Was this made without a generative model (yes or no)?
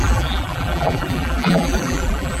no